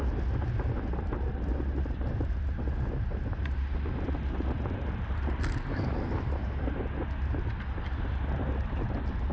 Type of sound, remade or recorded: recorded